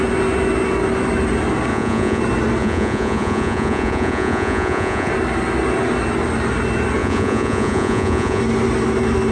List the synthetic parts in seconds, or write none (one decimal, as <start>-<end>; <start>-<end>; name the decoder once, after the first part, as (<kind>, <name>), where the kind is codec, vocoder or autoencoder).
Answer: 1.7-2.2 (vocoder, Vocos); 2.6-5.1; 7.0-8.4